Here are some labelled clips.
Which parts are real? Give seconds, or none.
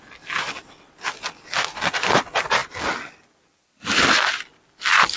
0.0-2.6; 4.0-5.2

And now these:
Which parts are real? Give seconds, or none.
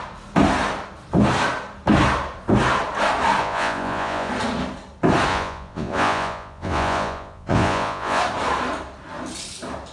0.0-3.4; 4.3-5.3; 8.2-9.9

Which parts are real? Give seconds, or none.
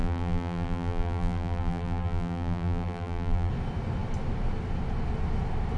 3.5-5.8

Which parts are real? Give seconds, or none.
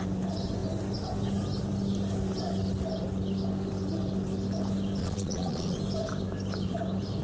0.0-5.0; 5.8-7.2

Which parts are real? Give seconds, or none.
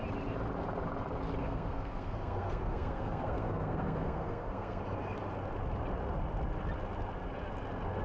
0.0-1.4; 4.8-8.0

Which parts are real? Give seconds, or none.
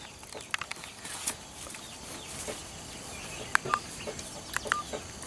0.0-5.3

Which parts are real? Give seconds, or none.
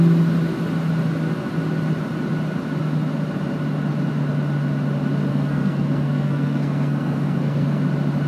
0.0-5.3; 7.8-8.3